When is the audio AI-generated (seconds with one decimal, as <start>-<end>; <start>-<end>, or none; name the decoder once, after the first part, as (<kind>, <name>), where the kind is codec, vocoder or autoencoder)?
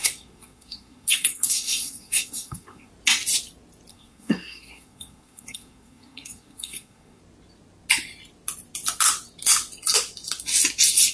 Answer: 0.0-2.9 (codec, SNAC); 3.9-7.2